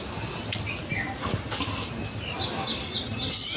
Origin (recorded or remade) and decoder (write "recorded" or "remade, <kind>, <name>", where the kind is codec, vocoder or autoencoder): recorded